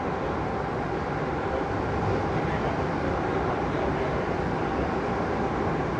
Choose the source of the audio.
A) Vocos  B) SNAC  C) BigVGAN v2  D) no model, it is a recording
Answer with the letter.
D